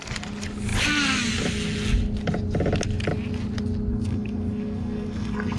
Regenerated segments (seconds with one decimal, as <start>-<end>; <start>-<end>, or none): 3.9-5.6

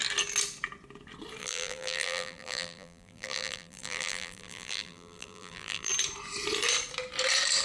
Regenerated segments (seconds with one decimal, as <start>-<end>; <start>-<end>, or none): 1.4-5.9

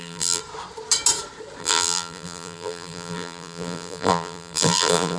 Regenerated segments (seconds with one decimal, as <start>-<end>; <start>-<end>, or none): 0.0-0.4; 1.6-5.2

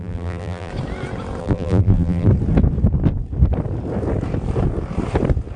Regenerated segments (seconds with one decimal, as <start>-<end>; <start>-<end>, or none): 0.0-0.7; 1.4-2.3

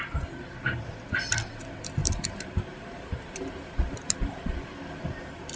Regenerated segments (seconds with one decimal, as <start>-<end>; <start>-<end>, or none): 2.0-3.9